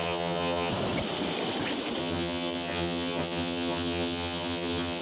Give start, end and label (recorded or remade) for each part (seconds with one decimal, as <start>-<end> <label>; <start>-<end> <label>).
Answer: 0.0-0.7 remade; 0.7-2.0 recorded; 2.0-5.0 remade